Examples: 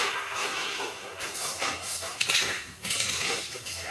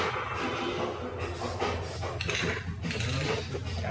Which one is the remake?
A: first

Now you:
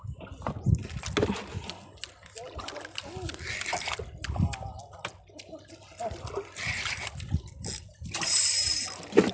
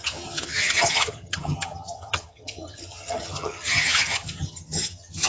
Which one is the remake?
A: second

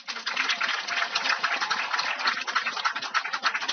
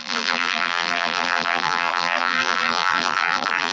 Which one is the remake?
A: second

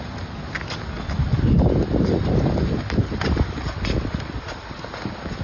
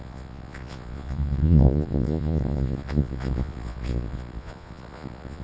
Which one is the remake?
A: second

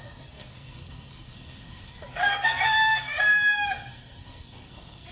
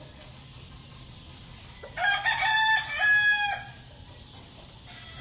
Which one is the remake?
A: first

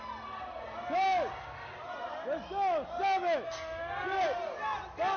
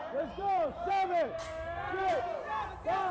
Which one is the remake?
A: second